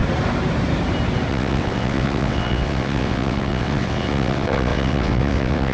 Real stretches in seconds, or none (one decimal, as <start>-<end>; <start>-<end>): 0.0-1.3